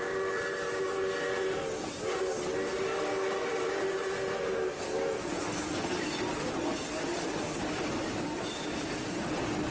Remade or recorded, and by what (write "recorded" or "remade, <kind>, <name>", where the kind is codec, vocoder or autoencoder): recorded